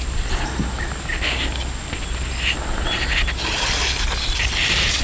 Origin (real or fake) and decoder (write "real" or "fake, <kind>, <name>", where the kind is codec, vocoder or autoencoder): real